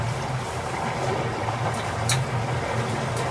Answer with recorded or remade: recorded